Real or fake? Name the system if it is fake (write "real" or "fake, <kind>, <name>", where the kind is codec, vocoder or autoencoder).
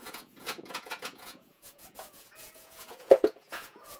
fake, vocoder, Vocos